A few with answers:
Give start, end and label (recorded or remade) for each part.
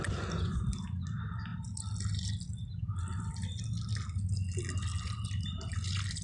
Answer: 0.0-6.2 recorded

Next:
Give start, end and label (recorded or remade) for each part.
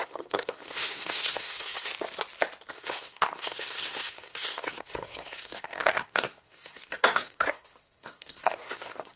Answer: 0.0-1.9 remade; 1.9-2.7 recorded; 2.7-9.2 remade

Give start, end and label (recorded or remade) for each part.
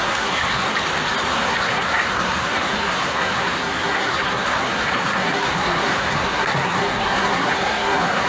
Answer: 0.0-0.7 remade; 0.7-1.3 recorded; 1.3-8.3 remade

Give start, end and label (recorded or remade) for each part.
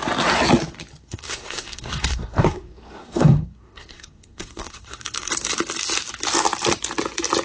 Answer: 0.0-1.0 recorded; 1.0-5.3 remade; 5.3-7.4 recorded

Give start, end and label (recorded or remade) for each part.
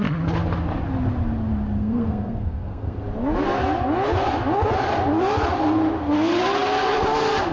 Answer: 0.0-1.8 recorded; 1.8-3.0 remade; 3.0-7.5 recorded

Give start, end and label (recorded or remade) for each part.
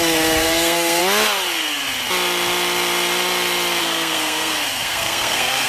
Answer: 0.0-1.0 remade; 1.0-3.8 recorded; 3.8-5.7 remade